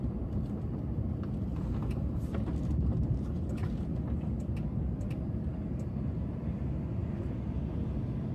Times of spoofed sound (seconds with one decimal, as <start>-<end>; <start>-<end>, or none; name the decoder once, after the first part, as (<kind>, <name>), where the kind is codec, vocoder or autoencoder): 0.0-3.6 (vocoder, BigVGAN v2); 4.7-7.0